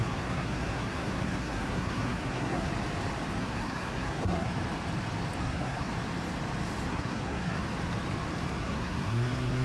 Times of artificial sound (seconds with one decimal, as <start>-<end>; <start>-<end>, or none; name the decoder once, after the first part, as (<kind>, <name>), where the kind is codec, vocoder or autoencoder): 0.0-2.7 (codec, SNAC); 3.4-4.5; 5.4-5.9; 6.9-7.6; 8.6-9.6

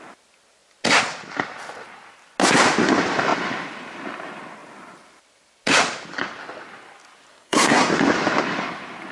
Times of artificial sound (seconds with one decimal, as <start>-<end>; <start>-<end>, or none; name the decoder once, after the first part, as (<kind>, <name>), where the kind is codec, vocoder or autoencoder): 7.3-7.9 (codec, SNAC)

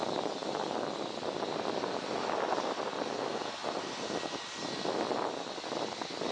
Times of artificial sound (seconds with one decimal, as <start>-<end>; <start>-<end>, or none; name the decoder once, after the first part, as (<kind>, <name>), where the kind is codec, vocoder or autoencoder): none

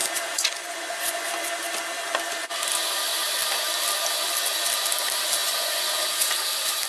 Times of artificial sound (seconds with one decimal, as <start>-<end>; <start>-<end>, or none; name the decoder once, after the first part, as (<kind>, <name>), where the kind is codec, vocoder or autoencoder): 0.0-1.3 (vocoder, Vocos); 5.4-6.3

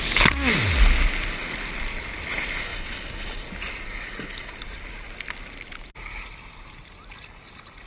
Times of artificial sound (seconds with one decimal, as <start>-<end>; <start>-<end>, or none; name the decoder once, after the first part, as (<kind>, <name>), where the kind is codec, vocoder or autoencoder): none